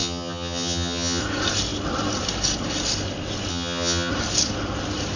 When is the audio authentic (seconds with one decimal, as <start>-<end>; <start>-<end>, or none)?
1.2-3.5; 4.1-5.2